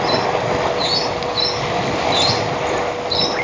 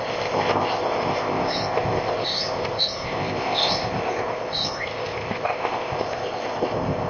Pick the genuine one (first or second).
first